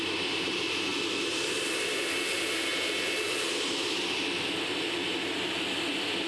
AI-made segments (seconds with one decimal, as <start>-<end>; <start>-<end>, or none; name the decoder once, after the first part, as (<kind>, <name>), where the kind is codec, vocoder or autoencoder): none